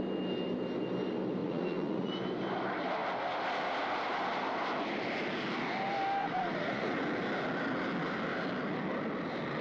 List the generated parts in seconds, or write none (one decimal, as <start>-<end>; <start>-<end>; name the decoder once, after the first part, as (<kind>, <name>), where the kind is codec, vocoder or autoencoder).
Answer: 1.4-2.1 (vocoder, Vocos); 6.2-7.0